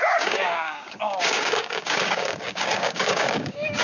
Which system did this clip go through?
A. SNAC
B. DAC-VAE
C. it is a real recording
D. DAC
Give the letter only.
D